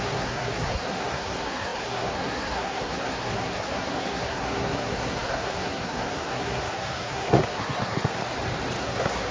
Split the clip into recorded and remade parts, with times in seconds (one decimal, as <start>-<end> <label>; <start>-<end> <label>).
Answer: 0.0-8.2 remade; 8.2-8.8 recorded; 8.8-9.3 remade